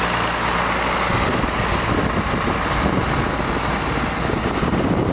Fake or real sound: real